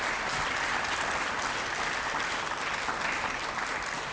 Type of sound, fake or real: real